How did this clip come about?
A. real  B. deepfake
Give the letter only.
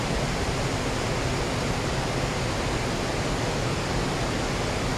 A